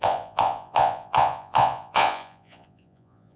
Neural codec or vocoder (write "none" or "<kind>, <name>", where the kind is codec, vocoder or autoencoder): vocoder, Vocos